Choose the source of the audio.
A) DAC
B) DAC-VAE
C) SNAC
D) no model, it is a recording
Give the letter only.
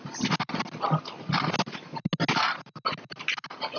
D